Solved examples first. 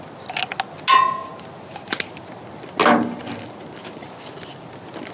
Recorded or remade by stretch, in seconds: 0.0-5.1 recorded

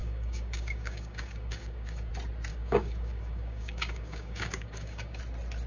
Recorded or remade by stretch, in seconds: 0.0-2.1 remade; 2.1-2.5 recorded; 2.5-5.2 remade; 5.2-5.7 recorded

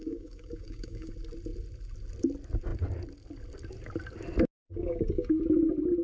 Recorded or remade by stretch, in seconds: 0.0-1.1 remade; 1.1-4.6 recorded; 4.6-5.3 remade; 5.3-6.0 recorded

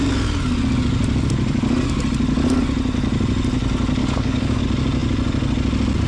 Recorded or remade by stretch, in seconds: 0.0-4.0 recorded; 4.0-4.6 remade; 4.6-6.1 recorded

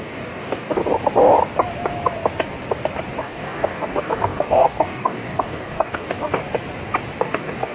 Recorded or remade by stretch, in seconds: 0.0-0.8 remade; 0.8-3.2 recorded; 3.2-6.4 remade; 6.4-7.2 recorded; 7.2-7.7 remade

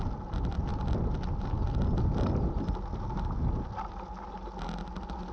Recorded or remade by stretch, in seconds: 0.0-5.3 recorded

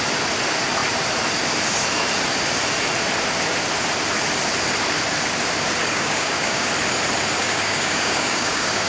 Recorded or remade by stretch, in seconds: 0.0-5.8 recorded; 5.8-6.7 remade; 6.7-7.4 recorded; 7.4-8.9 remade